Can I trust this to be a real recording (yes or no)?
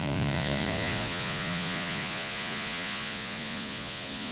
no